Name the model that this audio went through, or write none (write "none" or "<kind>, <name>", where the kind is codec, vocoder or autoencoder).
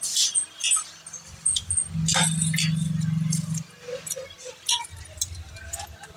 none